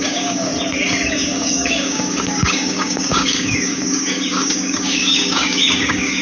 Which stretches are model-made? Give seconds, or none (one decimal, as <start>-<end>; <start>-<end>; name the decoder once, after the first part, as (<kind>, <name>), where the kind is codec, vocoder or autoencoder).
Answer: 0.0-0.5 (codec, DAC); 1.1-6.2